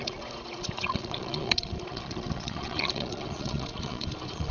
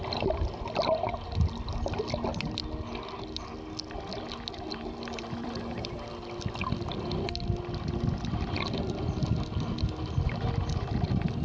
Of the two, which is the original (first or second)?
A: second